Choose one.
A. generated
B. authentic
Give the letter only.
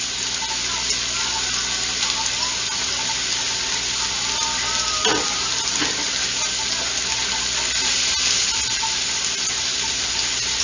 B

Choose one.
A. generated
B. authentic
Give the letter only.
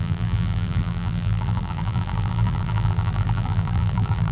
A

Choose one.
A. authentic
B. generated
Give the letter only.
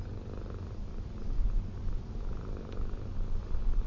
A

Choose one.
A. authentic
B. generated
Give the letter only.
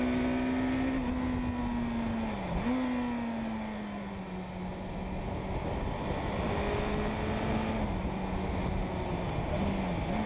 A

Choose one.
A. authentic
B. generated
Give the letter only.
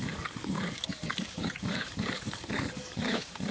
B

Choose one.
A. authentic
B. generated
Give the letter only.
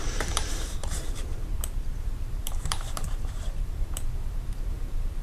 B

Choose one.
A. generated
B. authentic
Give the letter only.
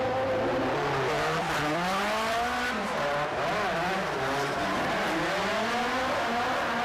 B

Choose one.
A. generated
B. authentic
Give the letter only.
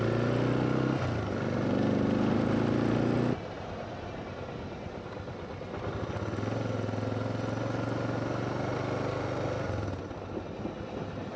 B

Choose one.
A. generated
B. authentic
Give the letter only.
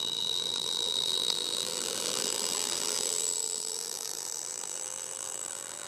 A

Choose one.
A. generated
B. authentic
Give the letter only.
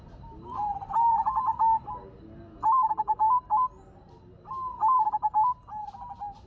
B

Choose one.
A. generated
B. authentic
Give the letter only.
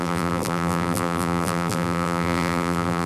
A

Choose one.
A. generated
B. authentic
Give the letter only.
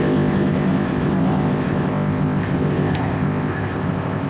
A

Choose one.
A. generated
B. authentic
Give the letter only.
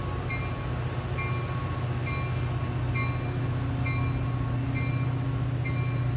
B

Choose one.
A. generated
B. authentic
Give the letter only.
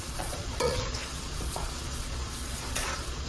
A